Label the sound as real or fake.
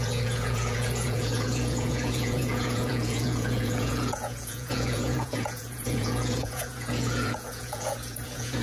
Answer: fake